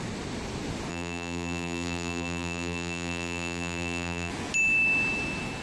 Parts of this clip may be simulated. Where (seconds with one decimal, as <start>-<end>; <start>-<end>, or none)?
0.9-4.3